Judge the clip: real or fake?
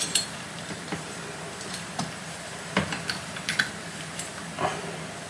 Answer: fake